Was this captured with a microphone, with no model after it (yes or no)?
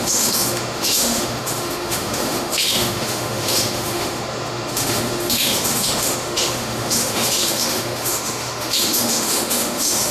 no